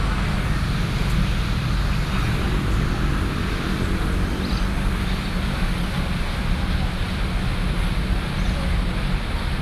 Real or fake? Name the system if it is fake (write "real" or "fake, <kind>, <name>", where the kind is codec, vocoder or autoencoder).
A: real